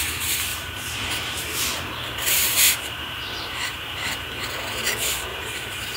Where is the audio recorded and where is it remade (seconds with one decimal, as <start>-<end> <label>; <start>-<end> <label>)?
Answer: 0.0-0.5 recorded; 0.5-4.1 remade; 4.1-5.3 recorded; 5.3-6.0 remade